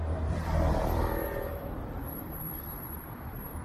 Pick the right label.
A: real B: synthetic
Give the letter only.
B